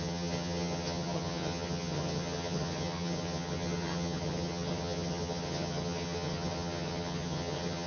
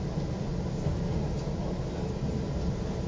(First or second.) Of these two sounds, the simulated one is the first